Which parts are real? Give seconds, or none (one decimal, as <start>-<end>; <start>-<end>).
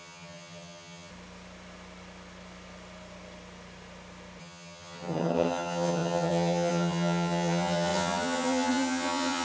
1.1-4.4